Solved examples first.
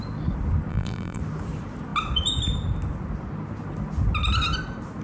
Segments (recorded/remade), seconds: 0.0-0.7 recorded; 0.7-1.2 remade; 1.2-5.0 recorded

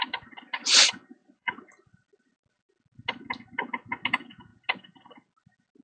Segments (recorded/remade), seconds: 0.0-1.2 recorded; 1.2-1.7 remade; 1.7-5.8 recorded

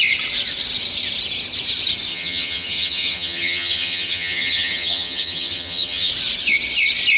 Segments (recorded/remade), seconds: 0.0-2.1 recorded; 2.1-6.1 remade; 6.1-7.2 recorded

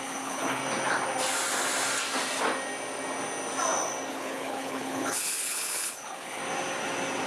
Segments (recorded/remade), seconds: 0.0-0.6 remade; 0.6-4.1 recorded; 4.1-6.4 remade; 6.4-7.3 recorded

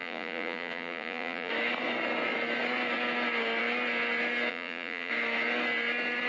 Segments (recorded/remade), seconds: 0.0-1.5 remade; 1.5-4.5 recorded; 4.5-5.1 remade; 5.1-6.3 recorded